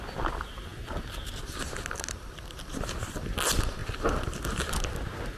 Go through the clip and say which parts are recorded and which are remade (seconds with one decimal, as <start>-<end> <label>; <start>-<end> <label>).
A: 0.0-5.4 recorded